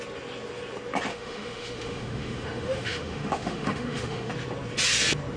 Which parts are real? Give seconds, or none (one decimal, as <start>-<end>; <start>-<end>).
0.0-1.1; 4.3-5.4